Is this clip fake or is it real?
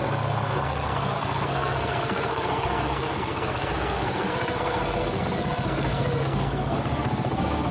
fake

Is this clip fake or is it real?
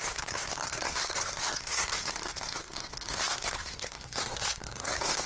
fake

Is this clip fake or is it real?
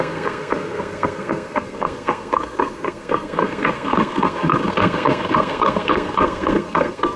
fake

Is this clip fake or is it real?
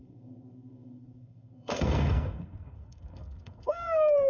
fake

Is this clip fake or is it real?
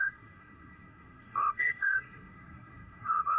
fake